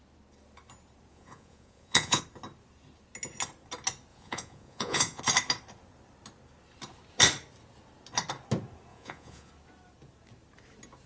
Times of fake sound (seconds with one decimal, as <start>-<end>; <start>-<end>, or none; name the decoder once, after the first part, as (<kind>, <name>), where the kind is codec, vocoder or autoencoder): 1.1-2.2 (vocoder, Vocos); 4.1-5.2; 8.9-9.5